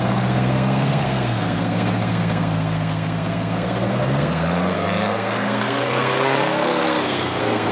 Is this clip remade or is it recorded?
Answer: remade